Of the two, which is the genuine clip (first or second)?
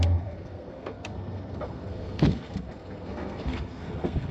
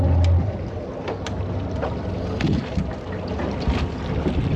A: second